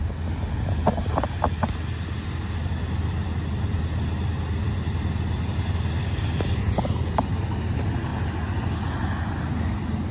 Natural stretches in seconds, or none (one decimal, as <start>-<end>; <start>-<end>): 0.0-10.1